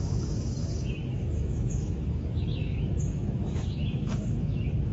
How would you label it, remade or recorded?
remade